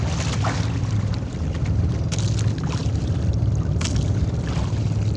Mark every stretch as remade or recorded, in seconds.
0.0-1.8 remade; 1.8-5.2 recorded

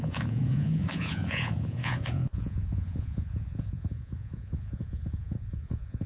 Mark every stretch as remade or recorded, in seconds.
0.0-6.1 remade

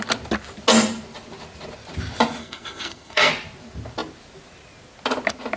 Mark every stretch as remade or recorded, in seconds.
0.0-2.4 recorded; 2.4-3.3 remade; 3.3-5.6 recorded

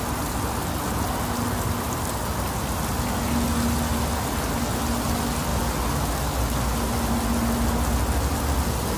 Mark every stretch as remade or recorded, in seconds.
0.0-9.0 recorded

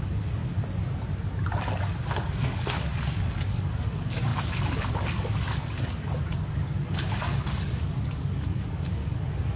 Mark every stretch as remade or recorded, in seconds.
0.0-0.4 remade; 0.4-2.2 recorded; 2.2-9.6 remade

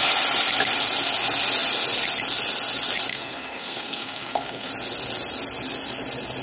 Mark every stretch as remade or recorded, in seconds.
0.0-3.1 recorded; 3.1-4.7 remade; 4.7-6.4 recorded